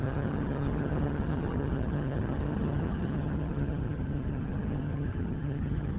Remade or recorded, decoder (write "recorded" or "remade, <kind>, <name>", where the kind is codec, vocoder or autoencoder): remade, vocoder, HiFi-GAN